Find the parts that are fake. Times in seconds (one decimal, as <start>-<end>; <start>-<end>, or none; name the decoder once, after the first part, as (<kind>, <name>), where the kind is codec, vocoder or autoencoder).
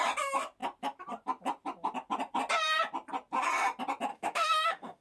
4.1-5.0 (autoencoder, DAC-VAE)